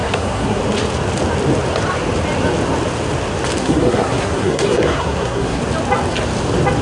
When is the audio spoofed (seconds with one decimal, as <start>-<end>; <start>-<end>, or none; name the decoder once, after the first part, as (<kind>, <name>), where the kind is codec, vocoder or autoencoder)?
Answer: 0.0-0.6 (codec, SNAC); 3.6-5.6